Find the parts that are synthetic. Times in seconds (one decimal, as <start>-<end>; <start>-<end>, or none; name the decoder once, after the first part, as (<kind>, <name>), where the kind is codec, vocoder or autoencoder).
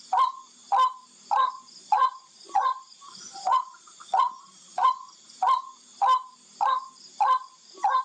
1.4-4.9 (vocoder, Vocos)